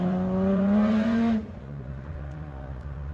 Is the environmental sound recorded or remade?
remade